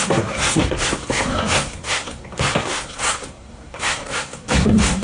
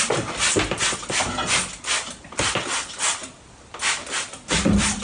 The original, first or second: second